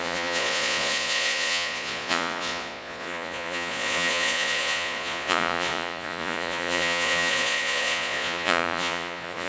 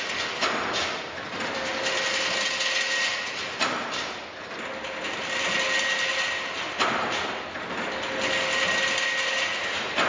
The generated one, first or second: first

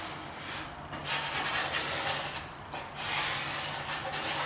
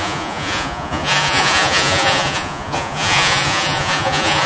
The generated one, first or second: second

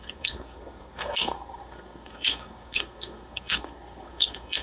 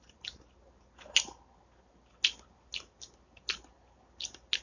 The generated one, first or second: first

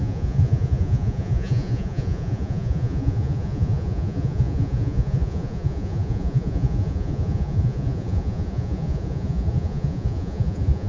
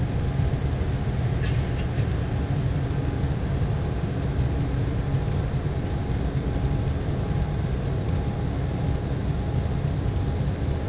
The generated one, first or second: first